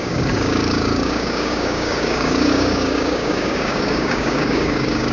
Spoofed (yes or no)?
yes